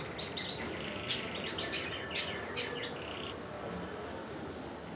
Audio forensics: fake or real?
real